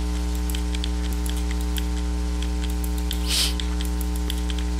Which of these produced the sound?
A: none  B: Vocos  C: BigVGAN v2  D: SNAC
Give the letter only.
A